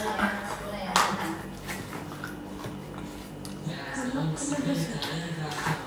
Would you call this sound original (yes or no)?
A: yes